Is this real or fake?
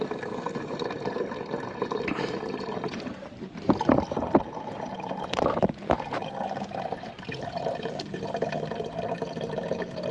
fake